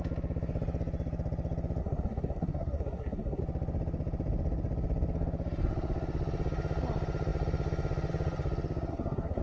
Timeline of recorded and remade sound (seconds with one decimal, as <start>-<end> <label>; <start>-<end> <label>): 0.0-1.8 recorded; 1.8-3.4 remade; 3.4-8.9 recorded; 8.9-9.4 remade